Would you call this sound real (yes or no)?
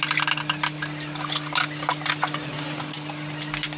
yes